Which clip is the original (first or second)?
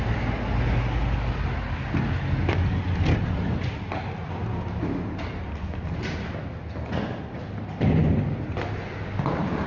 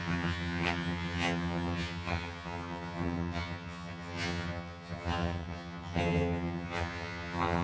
first